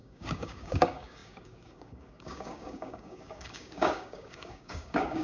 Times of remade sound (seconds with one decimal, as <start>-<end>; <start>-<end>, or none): 0.0-5.2